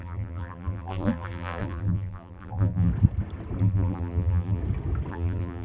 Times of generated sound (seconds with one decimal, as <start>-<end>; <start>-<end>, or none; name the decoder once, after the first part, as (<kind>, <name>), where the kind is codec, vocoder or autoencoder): 0.0-2.9 (vocoder, BigVGAN v2); 3.6-4.6; 5.1-5.6